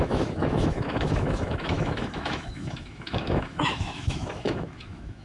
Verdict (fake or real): fake